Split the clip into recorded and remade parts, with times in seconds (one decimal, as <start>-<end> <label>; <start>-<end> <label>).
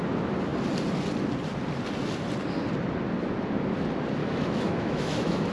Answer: 0.0-4.2 recorded; 4.2-5.5 remade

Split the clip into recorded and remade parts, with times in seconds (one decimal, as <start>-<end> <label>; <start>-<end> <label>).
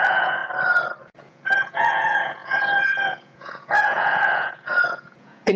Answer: 0.0-0.4 remade; 0.4-1.0 recorded; 1.0-5.6 remade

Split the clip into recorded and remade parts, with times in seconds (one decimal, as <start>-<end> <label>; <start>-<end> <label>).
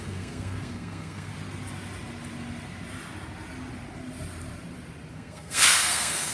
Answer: 0.0-1.3 remade; 1.3-5.1 recorded; 5.1-6.3 remade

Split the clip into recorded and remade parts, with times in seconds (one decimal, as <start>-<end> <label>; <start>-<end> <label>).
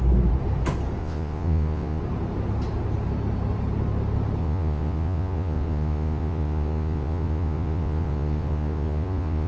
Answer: 0.0-1.0 recorded; 1.0-2.0 remade; 2.0-4.4 recorded; 4.4-9.5 remade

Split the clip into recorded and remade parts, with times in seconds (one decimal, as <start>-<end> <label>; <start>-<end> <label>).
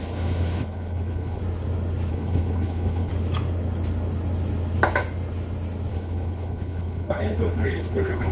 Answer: 0.0-1.4 remade; 1.4-2.1 recorded; 2.1-3.1 remade; 3.1-5.9 recorded; 5.9-8.3 remade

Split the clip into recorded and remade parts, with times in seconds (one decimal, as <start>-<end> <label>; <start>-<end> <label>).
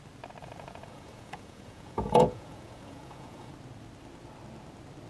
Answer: 0.0-0.4 recorded; 0.4-3.5 remade; 3.5-5.1 recorded